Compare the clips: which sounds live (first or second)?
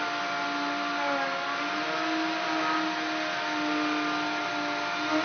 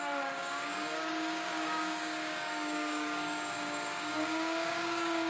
first